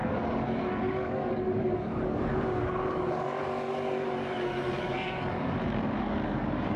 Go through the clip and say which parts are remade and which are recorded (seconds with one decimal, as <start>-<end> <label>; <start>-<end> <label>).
0.0-6.8 remade

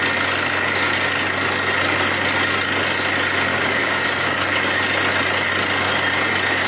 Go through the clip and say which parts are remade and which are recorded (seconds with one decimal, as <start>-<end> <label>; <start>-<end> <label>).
0.0-3.5 recorded; 3.5-4.8 remade; 4.8-6.7 recorded

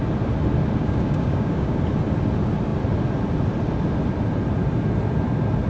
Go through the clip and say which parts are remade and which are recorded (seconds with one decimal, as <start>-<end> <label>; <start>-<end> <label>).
0.0-0.8 recorded; 0.8-1.8 remade; 1.8-5.7 recorded

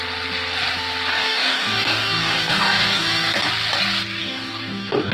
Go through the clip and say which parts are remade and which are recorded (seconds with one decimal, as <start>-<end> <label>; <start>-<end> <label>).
0.0-1.1 recorded; 1.1-3.4 remade; 3.4-4.2 recorded; 4.2-5.1 remade

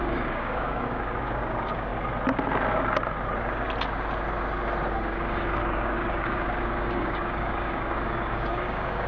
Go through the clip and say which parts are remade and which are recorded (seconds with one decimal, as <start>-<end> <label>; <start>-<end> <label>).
0.0-1.9 remade; 1.9-4.9 recorded; 4.9-9.1 remade

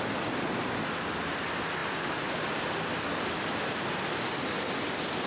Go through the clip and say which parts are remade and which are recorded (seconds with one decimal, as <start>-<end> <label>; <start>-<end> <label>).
0.0-5.3 recorded

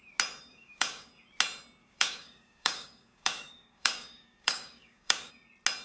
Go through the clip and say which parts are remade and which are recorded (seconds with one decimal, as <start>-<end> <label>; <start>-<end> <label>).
0.0-0.5 recorded; 0.5-1.1 remade; 1.1-1.8 recorded; 1.8-5.3 remade; 5.3-5.8 recorded